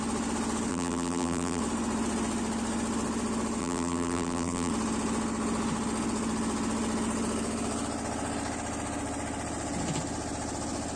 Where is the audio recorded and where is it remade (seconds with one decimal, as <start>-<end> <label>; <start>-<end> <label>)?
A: 0.0-0.7 recorded; 0.7-1.6 remade; 1.6-3.6 recorded; 3.6-4.7 remade; 4.7-11.0 recorded